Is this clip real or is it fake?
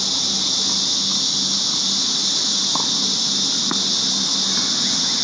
real